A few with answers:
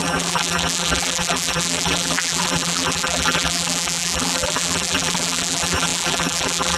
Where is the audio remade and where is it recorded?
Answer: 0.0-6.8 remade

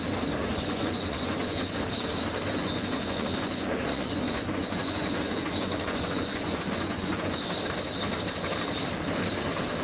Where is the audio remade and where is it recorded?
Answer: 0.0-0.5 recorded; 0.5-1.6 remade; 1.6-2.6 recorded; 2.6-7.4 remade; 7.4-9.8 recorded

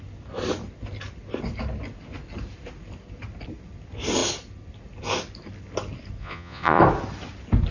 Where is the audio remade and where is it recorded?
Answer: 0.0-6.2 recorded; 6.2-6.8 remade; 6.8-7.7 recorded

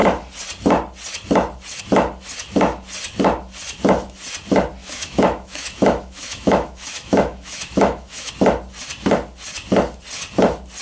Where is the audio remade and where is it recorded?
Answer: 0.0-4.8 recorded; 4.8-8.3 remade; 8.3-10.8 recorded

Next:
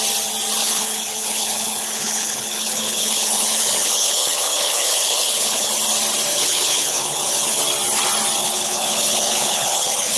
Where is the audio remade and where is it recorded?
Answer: 0.0-0.6 recorded; 0.6-5.7 remade; 5.7-6.3 recorded; 6.3-7.6 remade; 7.6-8.4 recorded; 8.4-10.2 remade

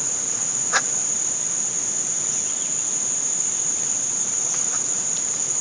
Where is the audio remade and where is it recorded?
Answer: 0.0-1.0 remade; 1.0-4.2 recorded; 4.2-5.6 remade

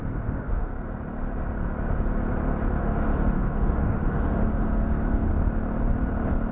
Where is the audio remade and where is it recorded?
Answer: 0.0-0.7 remade; 0.7-2.8 recorded; 2.8-5.3 remade; 5.3-6.5 recorded

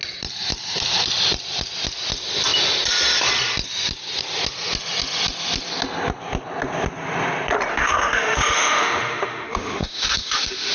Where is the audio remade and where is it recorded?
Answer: 0.0-7.7 recorded; 7.7-10.7 remade